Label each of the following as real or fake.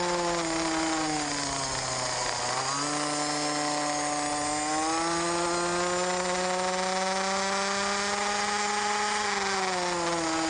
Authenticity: real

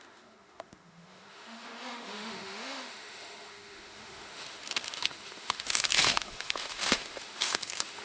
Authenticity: fake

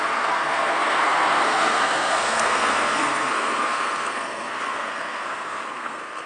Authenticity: fake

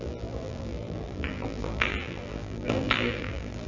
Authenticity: fake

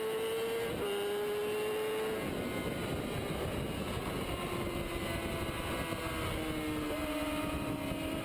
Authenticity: real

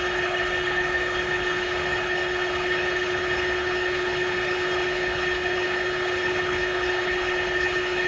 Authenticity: fake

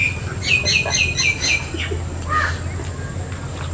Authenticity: real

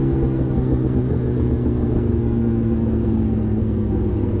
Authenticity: fake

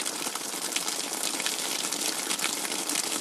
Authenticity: real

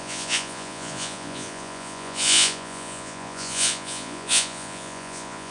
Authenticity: fake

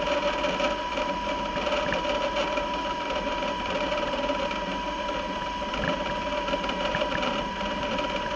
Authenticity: fake